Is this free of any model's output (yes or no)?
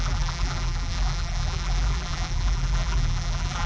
no